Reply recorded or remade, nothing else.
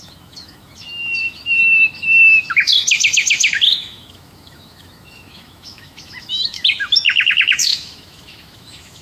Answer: remade